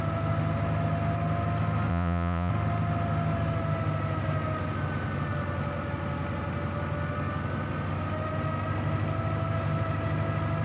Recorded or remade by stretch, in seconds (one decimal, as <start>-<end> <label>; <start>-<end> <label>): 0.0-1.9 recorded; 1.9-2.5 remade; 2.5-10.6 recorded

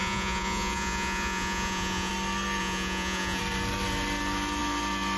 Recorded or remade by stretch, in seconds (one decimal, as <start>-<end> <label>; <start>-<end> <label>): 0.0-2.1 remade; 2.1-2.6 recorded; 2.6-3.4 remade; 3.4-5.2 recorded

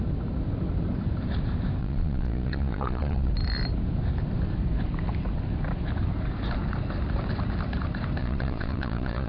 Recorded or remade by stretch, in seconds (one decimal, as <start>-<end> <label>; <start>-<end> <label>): 0.0-1.8 recorded; 1.8-3.3 remade; 3.3-8.2 recorded; 8.2-9.3 remade

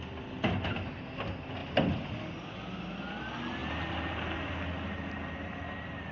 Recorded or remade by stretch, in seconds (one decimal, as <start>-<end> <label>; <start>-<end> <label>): 0.0-6.1 recorded